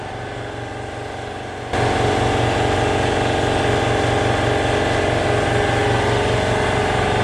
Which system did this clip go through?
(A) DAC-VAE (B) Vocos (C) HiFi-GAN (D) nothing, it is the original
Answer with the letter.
D